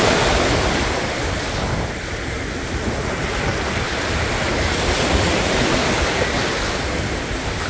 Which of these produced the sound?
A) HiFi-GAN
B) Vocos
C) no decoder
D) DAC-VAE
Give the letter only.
C